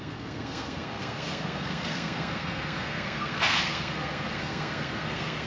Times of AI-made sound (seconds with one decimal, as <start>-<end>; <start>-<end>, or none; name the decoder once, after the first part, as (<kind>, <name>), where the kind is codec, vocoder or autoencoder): 0.0-5.5 (codec, SNAC)